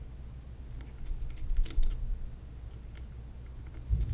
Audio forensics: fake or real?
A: real